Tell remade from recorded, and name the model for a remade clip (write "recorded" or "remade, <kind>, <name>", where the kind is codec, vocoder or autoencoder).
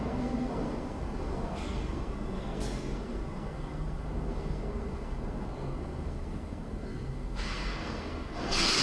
remade, codec, SNAC